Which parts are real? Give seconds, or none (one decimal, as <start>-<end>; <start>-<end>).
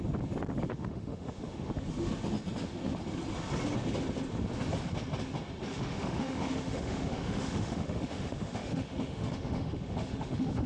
0.0-0.7; 1.7-5.7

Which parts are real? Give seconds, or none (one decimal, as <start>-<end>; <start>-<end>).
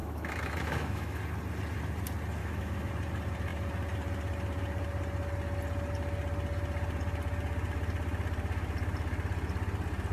1.2-2.4; 2.9-10.1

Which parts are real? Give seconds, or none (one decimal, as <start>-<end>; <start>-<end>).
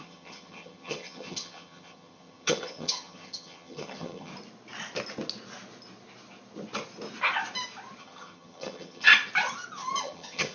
4.3-8.0; 9.1-10.0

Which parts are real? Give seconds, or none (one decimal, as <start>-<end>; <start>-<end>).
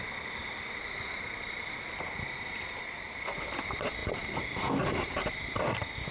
0.0-6.1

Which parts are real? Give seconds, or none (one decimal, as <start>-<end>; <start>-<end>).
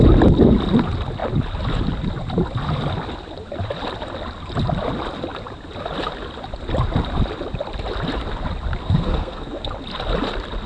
0.0-8.8; 9.7-10.7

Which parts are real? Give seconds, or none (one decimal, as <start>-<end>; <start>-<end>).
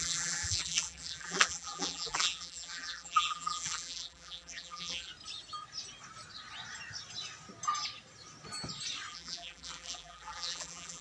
5.1-9.1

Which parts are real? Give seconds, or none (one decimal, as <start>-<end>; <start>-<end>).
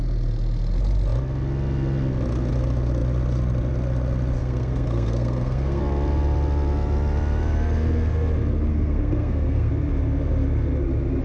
0.0-4.4; 5.8-8.7; 9.7-11.2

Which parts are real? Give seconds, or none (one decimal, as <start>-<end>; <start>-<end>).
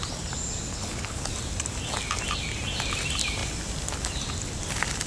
0.0-0.7; 1.3-5.1